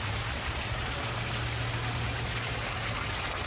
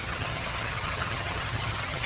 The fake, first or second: second